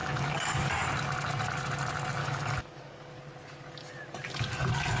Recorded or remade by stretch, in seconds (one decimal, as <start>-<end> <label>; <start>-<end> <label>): 0.0-0.7 remade; 0.7-2.2 recorded; 2.2-3.2 remade; 3.2-5.0 recorded